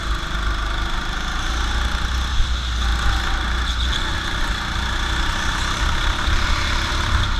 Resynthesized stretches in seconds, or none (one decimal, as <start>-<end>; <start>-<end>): none